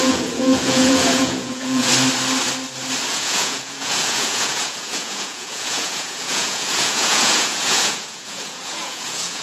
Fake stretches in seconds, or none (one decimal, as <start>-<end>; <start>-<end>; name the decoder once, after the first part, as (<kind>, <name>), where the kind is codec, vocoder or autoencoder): 0.0-1.9 (vocoder, Vocos); 3.1-9.4